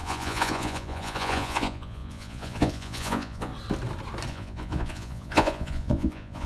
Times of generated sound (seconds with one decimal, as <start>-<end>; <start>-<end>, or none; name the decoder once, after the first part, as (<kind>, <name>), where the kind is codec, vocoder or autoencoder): 0.0-3.5 (vocoder, Vocos); 4.3-6.5